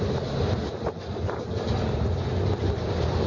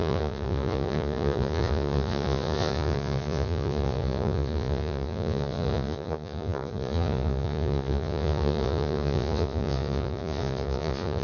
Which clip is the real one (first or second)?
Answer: first